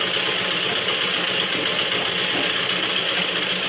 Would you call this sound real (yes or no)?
yes